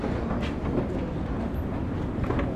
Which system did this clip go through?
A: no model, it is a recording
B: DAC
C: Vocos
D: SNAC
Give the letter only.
A